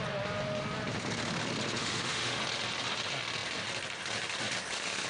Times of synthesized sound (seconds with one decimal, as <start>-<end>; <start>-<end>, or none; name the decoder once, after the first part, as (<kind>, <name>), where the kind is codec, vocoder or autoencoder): 1.8-2.4 (autoencoder, DAC-VAE)